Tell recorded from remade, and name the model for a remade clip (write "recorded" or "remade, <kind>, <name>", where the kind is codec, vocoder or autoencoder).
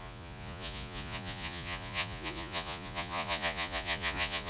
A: remade, vocoder, Vocos